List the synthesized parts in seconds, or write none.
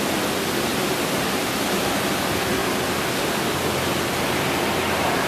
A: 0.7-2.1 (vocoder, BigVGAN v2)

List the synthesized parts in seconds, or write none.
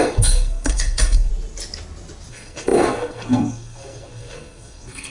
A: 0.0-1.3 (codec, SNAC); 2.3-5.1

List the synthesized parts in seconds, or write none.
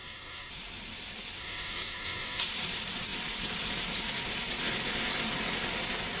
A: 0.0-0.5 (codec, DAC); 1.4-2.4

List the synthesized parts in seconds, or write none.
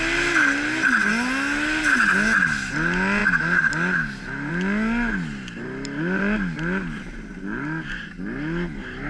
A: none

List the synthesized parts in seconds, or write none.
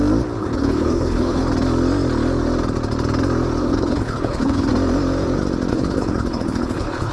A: 0.4-1.4 (codec, HILCodec); 3.6-4.7; 5.7-7.1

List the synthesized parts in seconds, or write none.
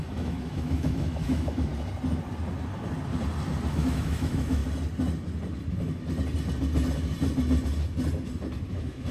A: 0.0-1.7 (autoencoder, DAC-VAE); 3.7-4.6; 8.7-9.1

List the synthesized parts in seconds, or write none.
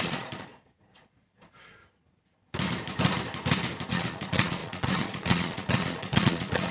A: 0.0-1.8 (vocoder, Vocos); 3.9-6.7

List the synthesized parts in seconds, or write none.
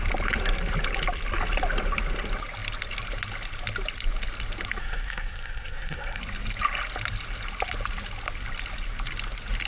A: 4.8-6.2 (codec, SNAC)